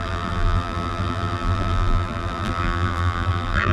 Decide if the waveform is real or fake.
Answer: fake